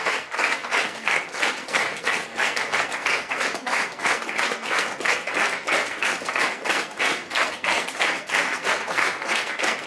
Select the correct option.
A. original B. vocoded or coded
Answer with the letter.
B